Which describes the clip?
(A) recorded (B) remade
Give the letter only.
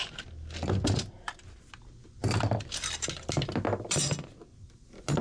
A